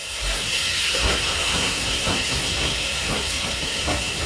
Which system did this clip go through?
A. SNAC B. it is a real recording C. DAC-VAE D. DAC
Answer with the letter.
A